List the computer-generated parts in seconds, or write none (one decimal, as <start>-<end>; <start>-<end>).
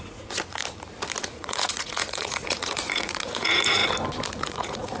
0.0-0.6; 1.2-3.8; 4.3-5.0